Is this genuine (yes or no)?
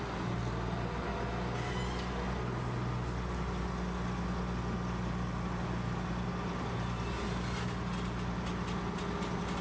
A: yes